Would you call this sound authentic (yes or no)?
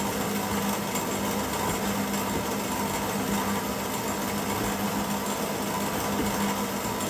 yes